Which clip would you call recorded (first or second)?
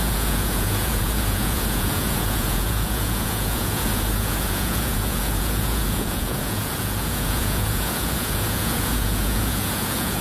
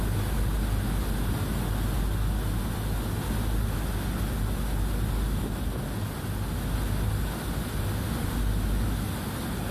second